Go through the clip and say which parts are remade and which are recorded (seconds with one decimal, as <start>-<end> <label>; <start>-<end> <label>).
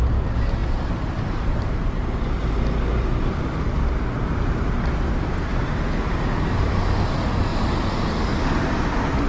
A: 0.0-0.6 recorded; 0.6-2.2 remade; 2.2-9.3 recorded